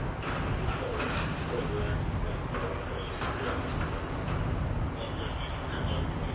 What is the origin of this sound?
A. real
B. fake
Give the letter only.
A